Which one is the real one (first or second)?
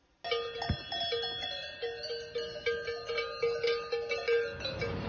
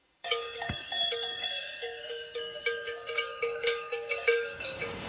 first